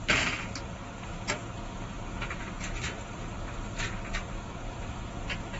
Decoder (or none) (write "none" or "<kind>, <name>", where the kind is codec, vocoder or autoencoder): vocoder, BigVGAN v2